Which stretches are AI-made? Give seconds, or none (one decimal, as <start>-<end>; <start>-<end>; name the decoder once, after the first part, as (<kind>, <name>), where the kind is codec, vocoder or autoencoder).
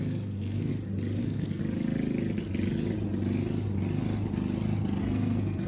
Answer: 0.0-0.7 (codec, SNAC); 1.2-1.6; 5.0-5.7